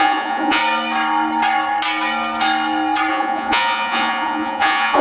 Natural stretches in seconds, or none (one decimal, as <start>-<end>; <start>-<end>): 0.6-3.1